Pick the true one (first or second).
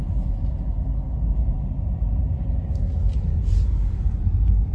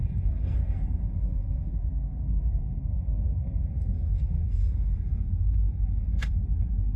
first